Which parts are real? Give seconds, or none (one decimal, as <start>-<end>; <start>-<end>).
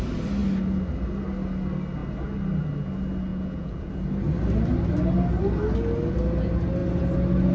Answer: 0.0-3.3; 3.9-7.5